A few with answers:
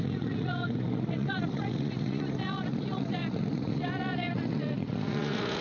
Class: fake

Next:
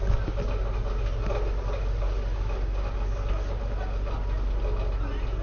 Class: real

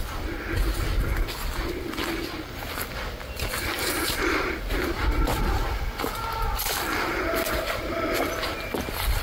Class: real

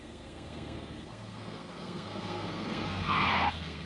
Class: fake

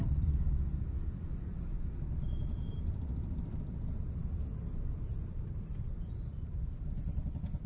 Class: fake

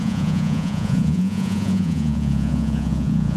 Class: fake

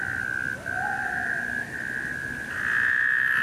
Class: real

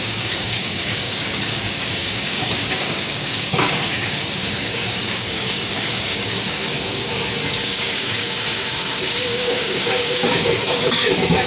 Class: fake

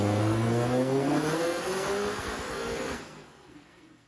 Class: fake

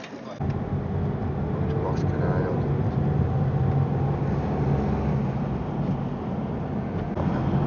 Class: real